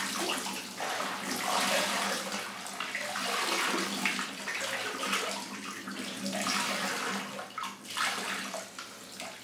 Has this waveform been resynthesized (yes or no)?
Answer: no